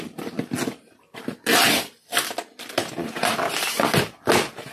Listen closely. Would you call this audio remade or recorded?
recorded